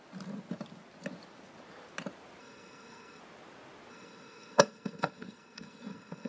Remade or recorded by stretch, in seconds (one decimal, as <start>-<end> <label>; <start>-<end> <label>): 0.0-2.4 recorded; 2.4-3.2 remade; 3.2-3.9 recorded; 3.9-6.3 remade